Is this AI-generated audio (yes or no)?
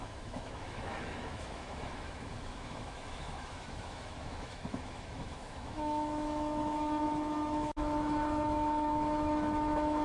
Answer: yes